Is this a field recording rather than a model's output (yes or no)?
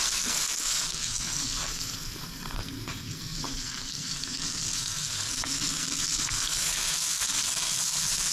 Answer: no